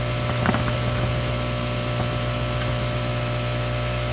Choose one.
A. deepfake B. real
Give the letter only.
B